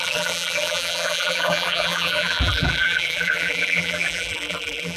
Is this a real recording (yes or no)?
no